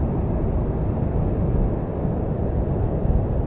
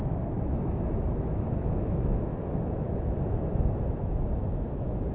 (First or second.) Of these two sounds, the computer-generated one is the second